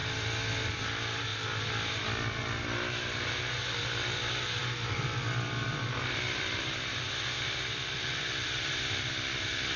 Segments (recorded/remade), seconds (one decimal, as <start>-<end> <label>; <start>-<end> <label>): 0.0-0.6 recorded; 0.6-1.3 remade; 1.3-4.6 recorded; 4.6-9.8 remade